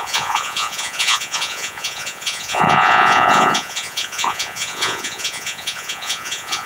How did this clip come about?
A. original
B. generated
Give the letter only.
B